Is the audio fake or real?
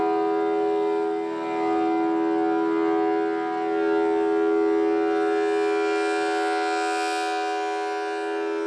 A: real